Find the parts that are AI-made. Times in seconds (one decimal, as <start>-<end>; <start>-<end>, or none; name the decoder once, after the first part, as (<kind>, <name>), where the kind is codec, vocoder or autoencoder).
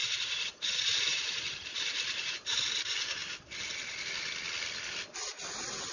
1.1-2.6 (vocoder, BigVGAN v2)